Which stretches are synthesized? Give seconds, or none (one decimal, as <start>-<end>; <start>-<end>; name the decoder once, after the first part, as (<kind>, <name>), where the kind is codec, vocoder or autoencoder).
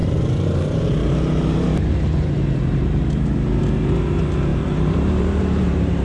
0.0-6.0 (vocoder, BigVGAN v2)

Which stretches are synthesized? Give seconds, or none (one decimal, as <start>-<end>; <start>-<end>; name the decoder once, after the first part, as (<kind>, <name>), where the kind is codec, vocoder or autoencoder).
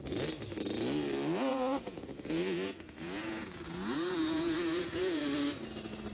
1.5-5.2 (vocoder, Vocos)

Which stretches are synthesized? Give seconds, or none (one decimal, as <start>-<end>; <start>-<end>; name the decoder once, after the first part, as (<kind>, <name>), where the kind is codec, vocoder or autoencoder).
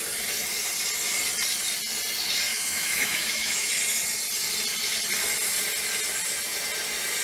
2.5-3.7 (autoencoder, DAC-VAE)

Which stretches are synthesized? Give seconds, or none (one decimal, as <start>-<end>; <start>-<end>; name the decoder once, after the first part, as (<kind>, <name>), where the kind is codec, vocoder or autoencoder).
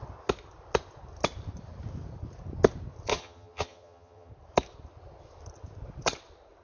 3.1-4.3 (vocoder, HiFi-GAN)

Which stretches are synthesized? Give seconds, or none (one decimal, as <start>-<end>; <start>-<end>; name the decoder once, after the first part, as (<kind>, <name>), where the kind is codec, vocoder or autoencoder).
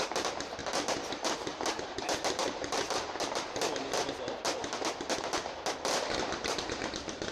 0.6-1.1 (vocoder, BigVGAN v2); 2.4-3.4